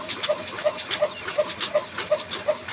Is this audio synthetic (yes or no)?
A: no